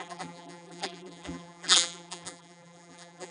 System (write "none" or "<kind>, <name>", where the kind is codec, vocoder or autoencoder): vocoder, BigVGAN v2